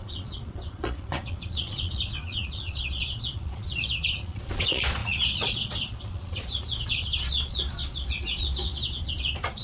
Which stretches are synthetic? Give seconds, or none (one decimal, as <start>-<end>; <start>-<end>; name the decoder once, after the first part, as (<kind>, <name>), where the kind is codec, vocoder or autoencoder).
0.0-9.6 (vocoder, Vocos)